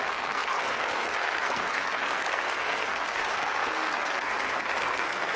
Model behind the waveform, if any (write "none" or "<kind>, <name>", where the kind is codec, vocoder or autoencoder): codec, SNAC